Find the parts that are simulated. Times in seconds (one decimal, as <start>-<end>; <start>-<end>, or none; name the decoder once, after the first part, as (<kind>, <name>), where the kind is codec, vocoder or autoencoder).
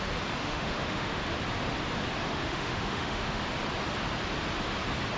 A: 0.4-1.2 (autoencoder, DAC-VAE); 2.3-3.4